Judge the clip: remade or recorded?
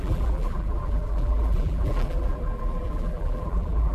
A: remade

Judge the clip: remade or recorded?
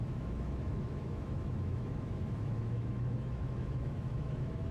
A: remade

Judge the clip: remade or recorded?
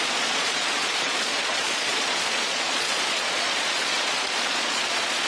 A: remade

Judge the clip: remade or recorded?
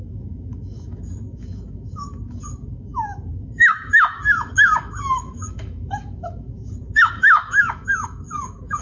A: remade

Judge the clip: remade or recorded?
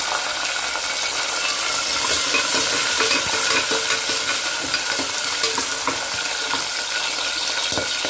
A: recorded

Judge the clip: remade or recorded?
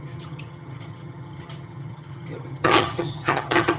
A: remade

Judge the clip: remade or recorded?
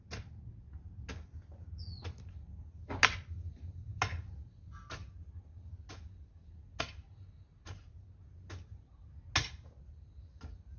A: recorded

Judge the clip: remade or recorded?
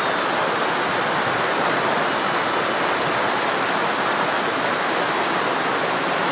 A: recorded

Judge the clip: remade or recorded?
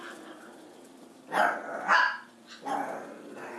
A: recorded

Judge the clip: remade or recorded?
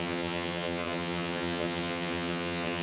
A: remade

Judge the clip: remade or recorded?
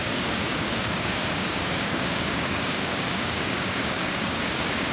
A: remade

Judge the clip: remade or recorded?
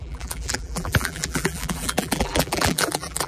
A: remade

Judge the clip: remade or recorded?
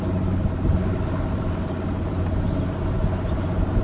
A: recorded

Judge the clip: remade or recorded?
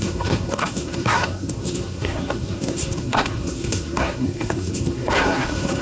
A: remade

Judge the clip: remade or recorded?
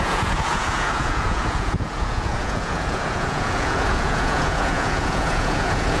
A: remade